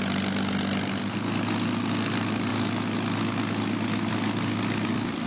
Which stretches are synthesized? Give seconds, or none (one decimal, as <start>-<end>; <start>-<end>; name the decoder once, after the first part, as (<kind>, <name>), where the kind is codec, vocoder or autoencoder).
none